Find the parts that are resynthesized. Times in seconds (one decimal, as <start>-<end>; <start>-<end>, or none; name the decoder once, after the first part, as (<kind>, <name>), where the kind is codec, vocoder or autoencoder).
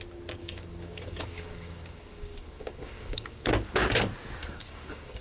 0.4-3.5 (codec, DAC); 4.4-5.2